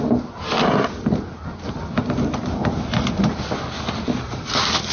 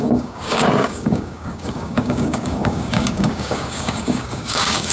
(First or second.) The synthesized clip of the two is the second